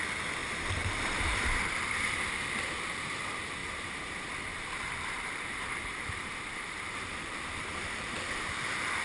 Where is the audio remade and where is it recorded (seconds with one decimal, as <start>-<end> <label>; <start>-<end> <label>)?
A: 0.0-0.4 recorded; 0.4-1.4 remade; 1.4-3.6 recorded; 3.6-4.1 remade; 4.1-4.5 recorded; 4.5-8.3 remade; 8.3-9.0 recorded